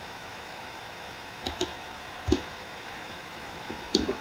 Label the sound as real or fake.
fake